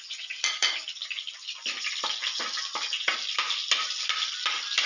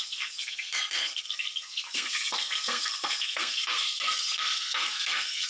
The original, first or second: first